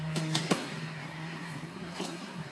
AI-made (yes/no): yes